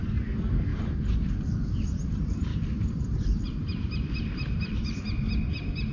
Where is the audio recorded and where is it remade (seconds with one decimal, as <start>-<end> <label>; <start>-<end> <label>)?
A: 0.0-0.7 recorded; 0.7-1.3 remade; 1.3-2.5 recorded; 2.5-5.0 remade; 5.0-5.9 recorded